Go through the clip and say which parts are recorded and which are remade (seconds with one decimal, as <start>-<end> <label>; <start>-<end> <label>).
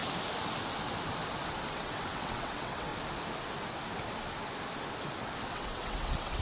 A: 0.0-1.7 recorded; 1.7-2.9 remade; 2.9-5.5 recorded; 5.5-6.4 remade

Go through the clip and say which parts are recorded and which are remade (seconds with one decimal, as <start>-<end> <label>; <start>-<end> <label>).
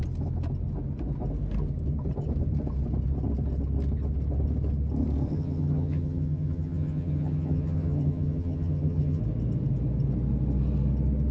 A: 0.0-5.3 recorded; 5.3-9.2 remade; 9.2-11.3 recorded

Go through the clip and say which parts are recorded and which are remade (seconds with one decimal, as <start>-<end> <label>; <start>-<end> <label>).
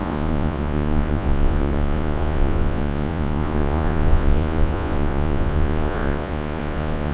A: 0.0-7.1 remade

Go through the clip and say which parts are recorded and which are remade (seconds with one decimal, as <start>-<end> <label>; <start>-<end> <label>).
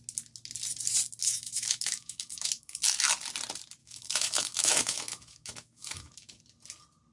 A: 0.0-1.2 recorded; 1.2-2.8 remade; 2.8-3.8 recorded; 3.8-6.4 remade; 6.4-7.1 recorded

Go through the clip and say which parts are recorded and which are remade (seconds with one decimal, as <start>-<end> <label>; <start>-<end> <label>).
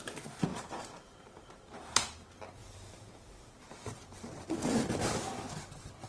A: 0.0-0.5 recorded; 0.5-2.2 remade; 2.2-2.6 recorded; 2.6-4.5 remade; 4.5-6.1 recorded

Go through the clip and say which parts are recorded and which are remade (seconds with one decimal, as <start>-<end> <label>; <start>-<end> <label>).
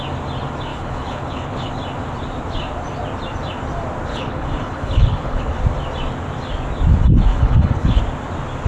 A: 0.0-0.7 recorded; 0.7-1.7 remade; 1.7-4.1 recorded; 4.1-5.6 remade; 5.6-7.3 recorded; 7.3-8.0 remade; 8.0-8.7 recorded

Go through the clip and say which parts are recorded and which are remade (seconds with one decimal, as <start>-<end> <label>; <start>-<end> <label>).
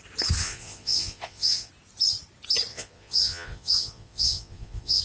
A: 0.0-0.4 recorded; 0.4-1.7 remade; 1.7-2.7 recorded; 2.7-5.0 remade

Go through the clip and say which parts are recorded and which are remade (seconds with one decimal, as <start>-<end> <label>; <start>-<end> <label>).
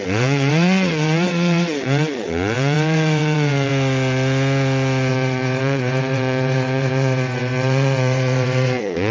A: 0.0-3.7 remade; 3.7-5.1 recorded; 5.1-9.1 remade